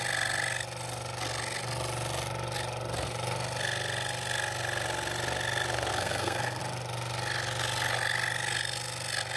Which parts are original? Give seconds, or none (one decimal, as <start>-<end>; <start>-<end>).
0.0-5.9; 6.6-9.4